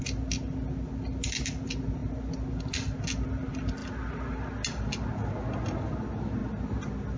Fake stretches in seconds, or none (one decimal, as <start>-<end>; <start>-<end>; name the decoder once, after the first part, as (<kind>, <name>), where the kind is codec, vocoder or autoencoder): none